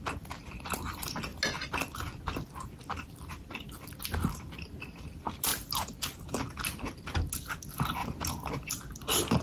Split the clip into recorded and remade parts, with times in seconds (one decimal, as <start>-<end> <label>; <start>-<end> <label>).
0.0-9.4 recorded